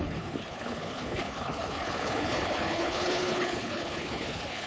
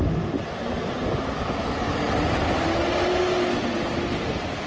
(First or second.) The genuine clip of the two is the second